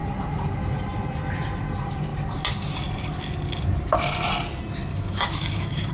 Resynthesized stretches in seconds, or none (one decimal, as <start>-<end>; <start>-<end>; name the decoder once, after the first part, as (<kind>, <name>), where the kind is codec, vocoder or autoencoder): 4.9-5.9 (autoencoder, DAC-VAE)